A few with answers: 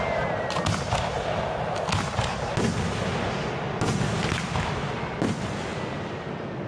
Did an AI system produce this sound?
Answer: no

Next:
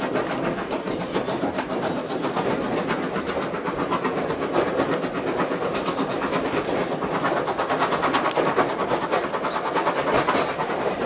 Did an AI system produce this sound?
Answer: no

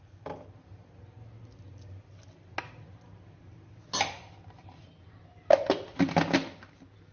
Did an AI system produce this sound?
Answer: no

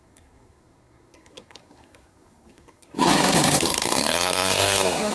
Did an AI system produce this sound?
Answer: yes